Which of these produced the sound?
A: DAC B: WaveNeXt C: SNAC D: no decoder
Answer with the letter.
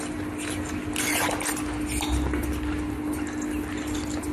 D